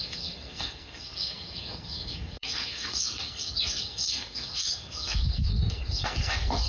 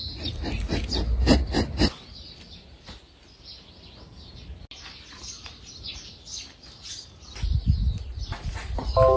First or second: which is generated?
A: first